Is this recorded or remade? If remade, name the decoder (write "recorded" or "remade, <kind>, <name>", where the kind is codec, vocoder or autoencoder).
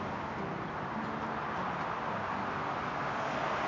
recorded